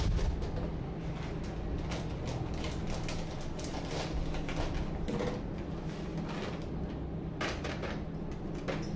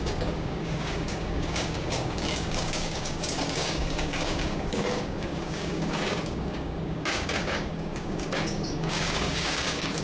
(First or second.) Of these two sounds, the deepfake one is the second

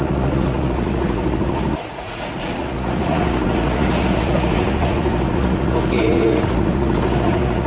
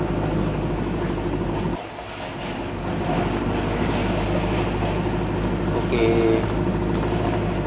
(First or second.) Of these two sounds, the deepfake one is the first